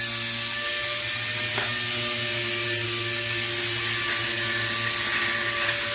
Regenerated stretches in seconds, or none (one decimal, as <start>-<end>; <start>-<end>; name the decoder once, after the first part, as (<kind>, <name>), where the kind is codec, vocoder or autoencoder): none